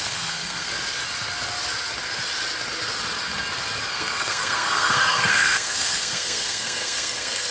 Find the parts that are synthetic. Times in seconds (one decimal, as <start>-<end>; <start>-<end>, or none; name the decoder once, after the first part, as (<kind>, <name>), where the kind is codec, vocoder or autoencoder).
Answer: 0.0-0.7 (codec, SNAC); 3.9-7.5